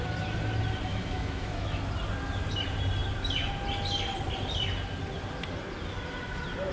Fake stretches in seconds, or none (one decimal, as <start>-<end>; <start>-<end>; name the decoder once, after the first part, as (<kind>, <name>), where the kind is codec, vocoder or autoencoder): 0.9-1.8 (autoencoder, DAC-VAE)